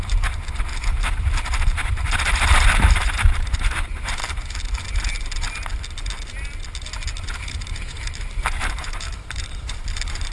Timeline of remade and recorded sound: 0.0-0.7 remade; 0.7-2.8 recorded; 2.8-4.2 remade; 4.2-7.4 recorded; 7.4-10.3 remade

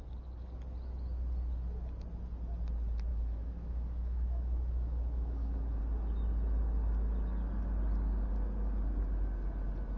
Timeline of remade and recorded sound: 0.0-3.1 recorded; 3.1-5.8 remade; 5.8-10.0 recorded

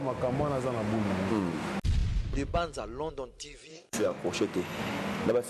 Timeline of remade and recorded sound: 0.0-3.7 recorded; 3.7-4.2 remade; 4.2-5.5 recorded

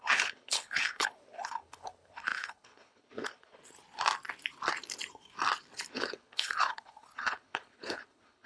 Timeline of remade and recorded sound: 0.0-3.6 remade; 3.6-5.9 recorded; 5.9-8.5 remade

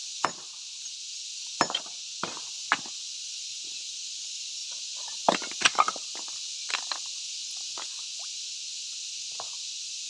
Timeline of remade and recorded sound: 0.0-10.1 recorded

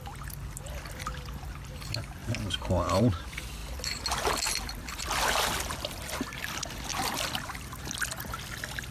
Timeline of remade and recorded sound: 0.0-2.2 recorded; 2.2-3.0 remade; 3.0-6.9 recorded; 6.9-7.6 remade; 7.6-8.9 recorded

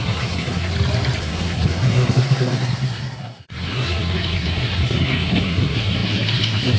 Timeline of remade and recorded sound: 0.0-0.7 remade; 0.7-1.2 recorded; 1.2-6.8 remade

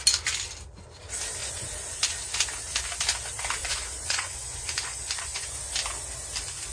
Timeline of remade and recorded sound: 0.0-1.4 recorded; 1.4-2.0 remade; 2.0-3.6 recorded; 3.6-5.6 remade; 5.6-6.7 recorded